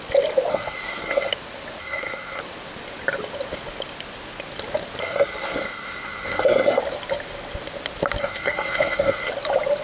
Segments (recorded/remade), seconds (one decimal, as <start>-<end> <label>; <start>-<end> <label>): 0.0-0.5 recorded; 0.5-1.3 remade; 1.3-1.8 recorded; 1.8-2.4 remade; 2.4-5.0 recorded; 5.0-6.8 remade; 6.8-8.2 recorded; 8.2-9.3 remade; 9.3-9.8 recorded